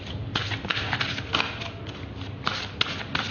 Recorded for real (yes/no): yes